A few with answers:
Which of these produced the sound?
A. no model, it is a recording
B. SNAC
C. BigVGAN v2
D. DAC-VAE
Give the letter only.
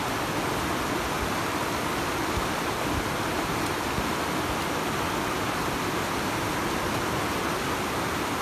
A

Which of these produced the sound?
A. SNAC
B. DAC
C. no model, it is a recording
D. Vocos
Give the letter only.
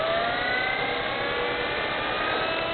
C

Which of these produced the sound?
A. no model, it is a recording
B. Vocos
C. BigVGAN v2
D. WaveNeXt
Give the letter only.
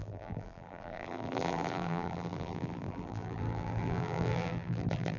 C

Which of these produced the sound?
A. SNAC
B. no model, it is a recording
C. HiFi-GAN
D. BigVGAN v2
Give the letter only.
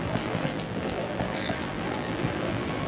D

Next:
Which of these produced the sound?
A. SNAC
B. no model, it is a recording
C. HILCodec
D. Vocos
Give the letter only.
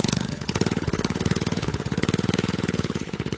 C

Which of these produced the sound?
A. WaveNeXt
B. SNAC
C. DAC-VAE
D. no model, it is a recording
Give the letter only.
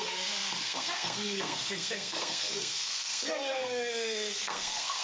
B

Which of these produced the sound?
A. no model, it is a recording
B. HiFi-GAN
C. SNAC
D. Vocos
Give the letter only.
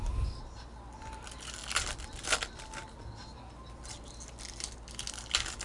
A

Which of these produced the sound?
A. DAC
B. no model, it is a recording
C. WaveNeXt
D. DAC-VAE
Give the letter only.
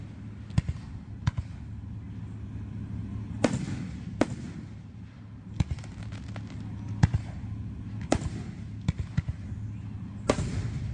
B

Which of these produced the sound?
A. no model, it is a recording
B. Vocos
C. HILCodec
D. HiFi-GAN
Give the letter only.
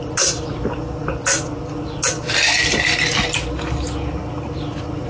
A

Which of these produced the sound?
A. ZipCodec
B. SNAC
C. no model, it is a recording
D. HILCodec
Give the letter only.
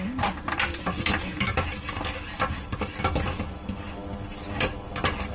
C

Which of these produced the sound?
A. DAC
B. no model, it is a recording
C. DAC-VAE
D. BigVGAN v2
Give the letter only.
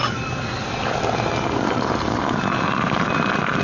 B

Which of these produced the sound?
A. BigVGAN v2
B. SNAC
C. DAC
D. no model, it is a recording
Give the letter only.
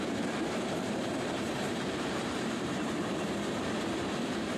A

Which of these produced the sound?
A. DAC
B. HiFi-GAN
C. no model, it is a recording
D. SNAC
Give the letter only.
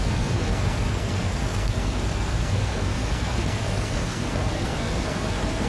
D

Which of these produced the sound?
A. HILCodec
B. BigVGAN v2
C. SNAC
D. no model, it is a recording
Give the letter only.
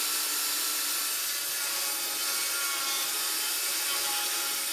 D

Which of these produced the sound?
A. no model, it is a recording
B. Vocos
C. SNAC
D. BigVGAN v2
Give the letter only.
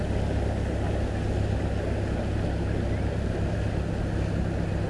A